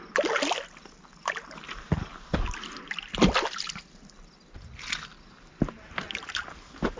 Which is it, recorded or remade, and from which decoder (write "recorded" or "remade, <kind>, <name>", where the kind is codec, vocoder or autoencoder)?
recorded